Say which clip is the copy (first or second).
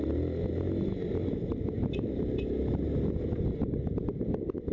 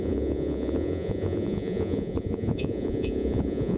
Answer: second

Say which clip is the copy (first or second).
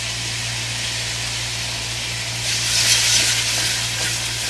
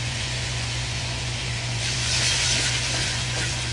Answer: second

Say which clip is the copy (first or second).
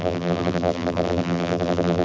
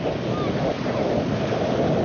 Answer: first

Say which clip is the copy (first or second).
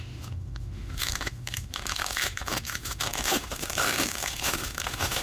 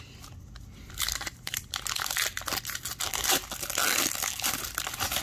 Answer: first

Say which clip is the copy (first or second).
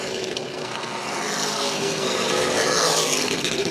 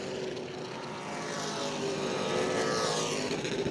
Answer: first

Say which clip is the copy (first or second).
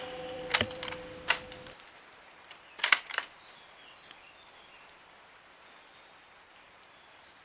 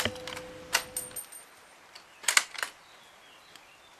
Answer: first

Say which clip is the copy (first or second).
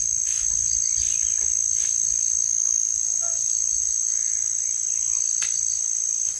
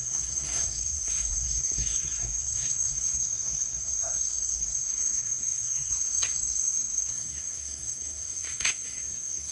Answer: second